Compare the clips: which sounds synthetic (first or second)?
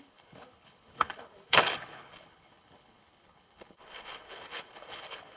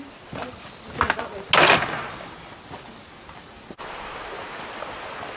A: first